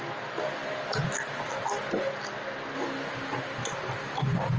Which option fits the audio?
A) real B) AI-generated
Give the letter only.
A